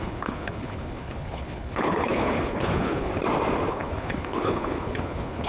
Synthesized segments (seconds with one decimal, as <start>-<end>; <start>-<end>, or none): 0.0-3.1; 3.7-5.5